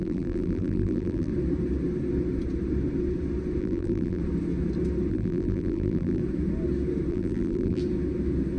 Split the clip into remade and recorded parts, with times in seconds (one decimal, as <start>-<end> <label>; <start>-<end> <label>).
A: 0.0-1.3 remade; 1.3-3.6 recorded; 3.6-4.2 remade; 4.2-5.1 recorded; 5.1-6.2 remade; 6.2-7.1 recorded; 7.1-7.8 remade; 7.8-8.6 recorded